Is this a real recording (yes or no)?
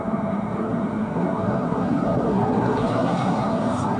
no